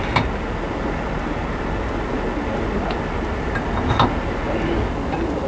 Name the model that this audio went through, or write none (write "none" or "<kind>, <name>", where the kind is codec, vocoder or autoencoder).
none